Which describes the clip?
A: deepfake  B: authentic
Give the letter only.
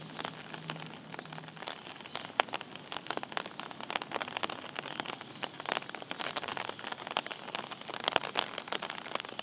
B